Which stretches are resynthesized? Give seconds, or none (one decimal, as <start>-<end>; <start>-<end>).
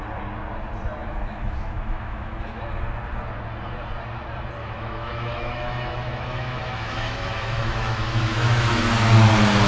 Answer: 1.0-2.6; 4.6-8.8